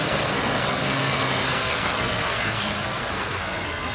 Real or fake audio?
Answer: fake